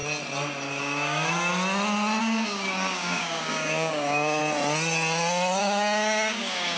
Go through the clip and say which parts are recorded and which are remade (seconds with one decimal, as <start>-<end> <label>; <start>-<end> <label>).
0.0-0.8 recorded; 0.8-1.5 remade; 1.5-2.2 recorded; 2.2-4.4 remade; 4.4-5.6 recorded; 5.6-6.8 remade

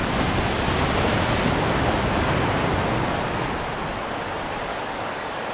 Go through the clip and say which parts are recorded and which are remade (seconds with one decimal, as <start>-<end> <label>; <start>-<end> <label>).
0.0-4.7 recorded; 4.7-5.5 remade

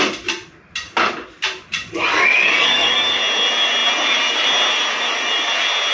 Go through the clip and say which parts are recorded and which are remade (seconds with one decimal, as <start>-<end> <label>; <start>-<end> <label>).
0.0-2.1 recorded; 2.1-3.2 remade; 3.2-5.9 recorded

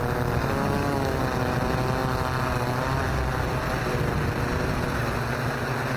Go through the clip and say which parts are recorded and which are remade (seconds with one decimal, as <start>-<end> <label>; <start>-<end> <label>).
0.0-0.6 recorded; 0.6-1.2 remade; 1.2-6.0 recorded